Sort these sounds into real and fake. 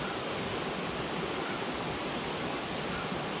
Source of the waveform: real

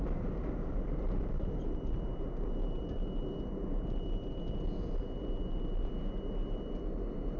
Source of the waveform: real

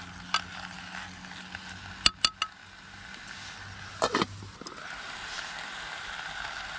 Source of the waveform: real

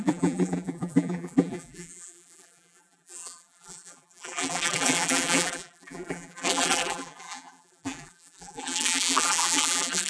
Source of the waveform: fake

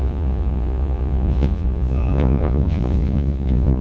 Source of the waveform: fake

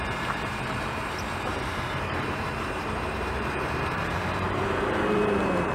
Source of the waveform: fake